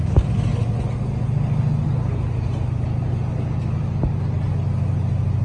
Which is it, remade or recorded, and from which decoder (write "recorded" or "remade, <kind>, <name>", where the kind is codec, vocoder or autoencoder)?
recorded